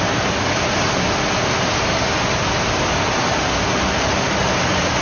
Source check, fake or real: real